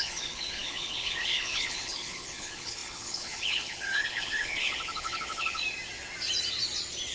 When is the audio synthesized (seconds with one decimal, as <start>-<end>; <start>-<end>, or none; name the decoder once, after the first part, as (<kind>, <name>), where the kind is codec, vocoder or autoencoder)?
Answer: 0.0-5.6 (codec, HILCodec)